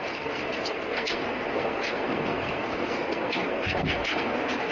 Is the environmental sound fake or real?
fake